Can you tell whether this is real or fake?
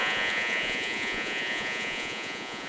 fake